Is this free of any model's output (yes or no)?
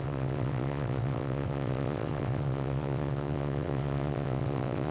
no